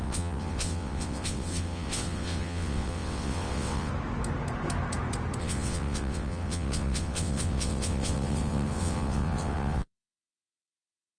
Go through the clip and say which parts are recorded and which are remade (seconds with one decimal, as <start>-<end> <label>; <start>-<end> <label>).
0.0-3.9 remade; 3.9-5.4 recorded; 5.4-11.2 remade

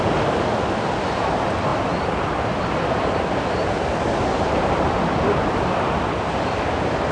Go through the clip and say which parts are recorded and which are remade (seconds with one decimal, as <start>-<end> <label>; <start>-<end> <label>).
0.0-7.1 recorded

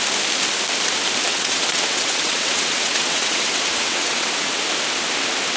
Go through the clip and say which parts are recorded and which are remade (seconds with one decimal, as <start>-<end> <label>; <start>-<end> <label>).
0.0-1.3 recorded; 1.3-4.7 remade; 4.7-5.6 recorded